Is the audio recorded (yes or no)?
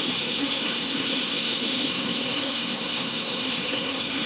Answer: no